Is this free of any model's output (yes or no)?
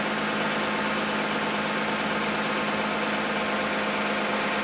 yes